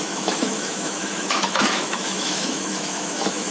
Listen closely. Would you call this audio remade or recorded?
remade